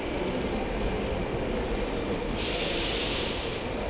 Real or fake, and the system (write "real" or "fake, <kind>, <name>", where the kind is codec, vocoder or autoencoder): real